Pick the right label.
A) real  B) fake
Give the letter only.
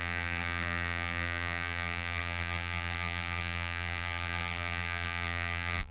B